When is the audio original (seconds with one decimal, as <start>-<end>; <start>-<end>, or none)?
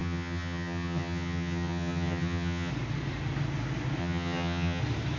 2.7-4.0; 4.8-5.2